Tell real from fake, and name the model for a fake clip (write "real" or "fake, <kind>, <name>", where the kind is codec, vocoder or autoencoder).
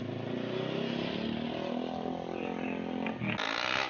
real